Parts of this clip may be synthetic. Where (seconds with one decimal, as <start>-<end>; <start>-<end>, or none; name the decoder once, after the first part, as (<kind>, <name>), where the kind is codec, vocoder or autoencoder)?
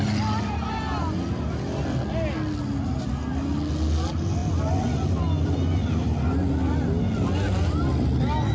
none